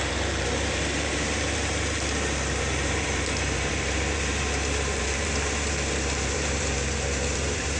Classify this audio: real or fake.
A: fake